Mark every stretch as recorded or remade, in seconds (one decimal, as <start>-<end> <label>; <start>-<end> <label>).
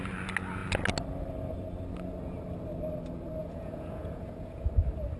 0.0-3.4 recorded; 3.4-4.7 remade; 4.7-5.2 recorded